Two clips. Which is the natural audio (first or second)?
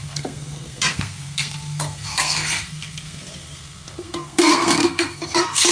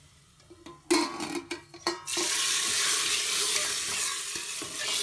second